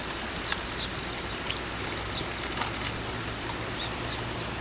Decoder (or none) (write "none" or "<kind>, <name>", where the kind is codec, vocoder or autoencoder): none